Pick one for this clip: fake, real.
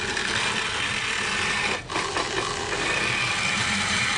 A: fake